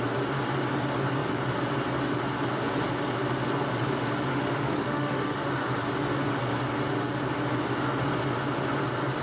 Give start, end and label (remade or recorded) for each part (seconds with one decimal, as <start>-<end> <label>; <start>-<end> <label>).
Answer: 0.0-4.3 recorded; 4.3-5.5 remade; 5.5-9.2 recorded